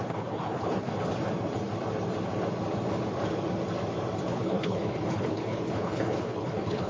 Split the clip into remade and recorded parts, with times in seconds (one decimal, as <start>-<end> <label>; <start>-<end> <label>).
0.0-0.9 remade; 0.9-4.3 recorded; 4.3-6.9 remade